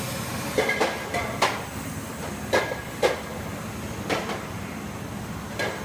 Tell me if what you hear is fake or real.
real